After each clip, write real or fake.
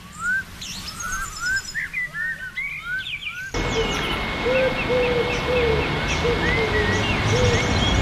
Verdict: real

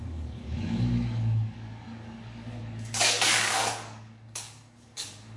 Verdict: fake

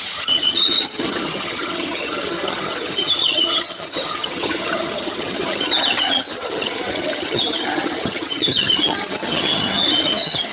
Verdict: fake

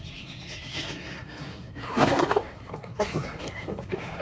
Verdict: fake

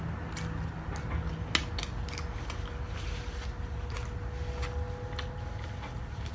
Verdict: real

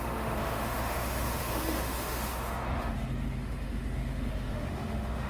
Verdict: fake